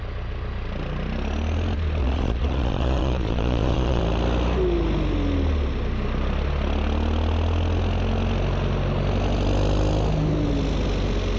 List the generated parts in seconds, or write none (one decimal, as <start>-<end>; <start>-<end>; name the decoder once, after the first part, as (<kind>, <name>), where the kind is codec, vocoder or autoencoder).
2.0-4.0 (vocoder, Vocos)